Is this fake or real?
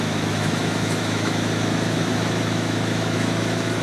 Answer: fake